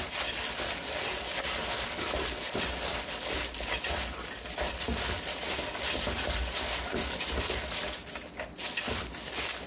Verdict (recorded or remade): recorded